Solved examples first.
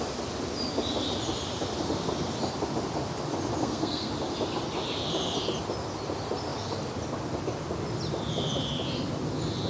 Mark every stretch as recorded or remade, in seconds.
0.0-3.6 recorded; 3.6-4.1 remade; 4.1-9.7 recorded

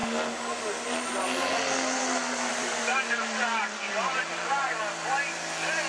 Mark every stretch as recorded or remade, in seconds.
0.0-2.5 recorded; 2.5-3.6 remade; 3.6-5.9 recorded

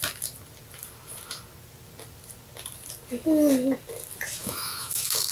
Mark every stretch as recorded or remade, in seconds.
0.0-4.4 recorded; 4.4-5.3 remade

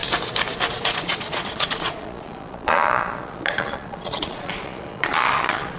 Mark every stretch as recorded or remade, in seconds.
0.0-0.7 recorded; 0.7-5.8 remade

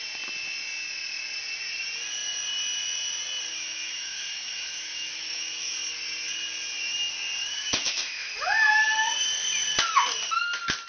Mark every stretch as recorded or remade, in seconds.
0.0-3.5 recorded; 3.5-5.7 remade; 5.7-7.5 recorded; 7.5-8.3 remade; 8.3-10.9 recorded

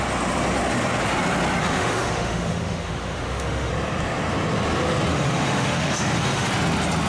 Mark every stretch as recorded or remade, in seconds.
0.0-1.6 recorded; 1.6-3.7 remade; 3.7-5.1 recorded; 5.1-6.5 remade; 6.5-7.1 recorded

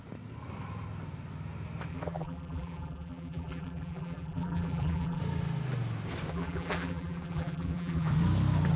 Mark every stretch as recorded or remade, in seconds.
0.0-1.9 recorded; 1.9-5.2 remade; 5.2-6.3 recorded; 6.3-8.1 remade; 8.1-8.8 recorded